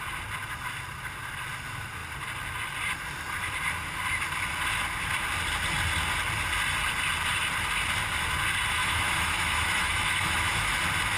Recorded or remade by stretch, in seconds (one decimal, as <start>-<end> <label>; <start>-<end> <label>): 0.0-8.8 recorded; 8.8-10.7 remade; 10.7-11.2 recorded